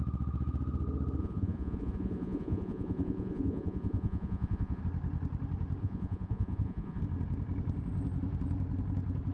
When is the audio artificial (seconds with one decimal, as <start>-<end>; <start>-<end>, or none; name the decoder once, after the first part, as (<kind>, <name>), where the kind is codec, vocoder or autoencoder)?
1.2-4.8 (vocoder, Vocos); 5.8-7.0